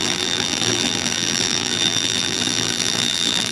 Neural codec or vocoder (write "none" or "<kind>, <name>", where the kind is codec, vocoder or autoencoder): vocoder, BigVGAN v2